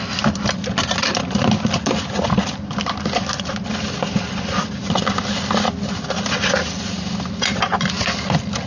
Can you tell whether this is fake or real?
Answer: real